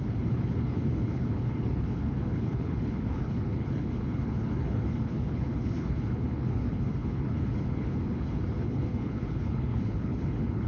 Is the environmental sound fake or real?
fake